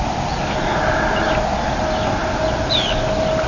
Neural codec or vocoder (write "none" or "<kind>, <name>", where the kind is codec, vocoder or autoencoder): none